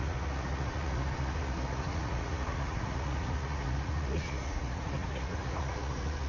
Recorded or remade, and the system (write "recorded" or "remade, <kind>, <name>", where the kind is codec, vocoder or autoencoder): remade, vocoder, Vocos